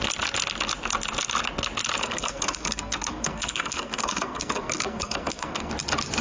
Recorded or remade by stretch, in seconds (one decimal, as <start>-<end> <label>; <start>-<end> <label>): 0.0-2.0 recorded; 2.0-5.7 remade; 5.7-6.2 recorded